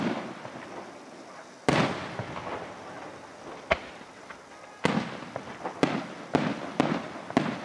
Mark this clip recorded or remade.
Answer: recorded